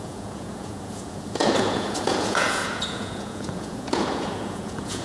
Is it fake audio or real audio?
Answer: fake